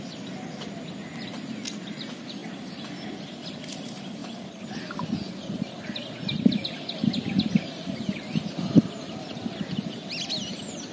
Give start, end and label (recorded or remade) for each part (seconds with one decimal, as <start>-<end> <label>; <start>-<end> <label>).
0.0-10.9 recorded